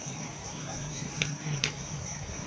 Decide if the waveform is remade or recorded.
remade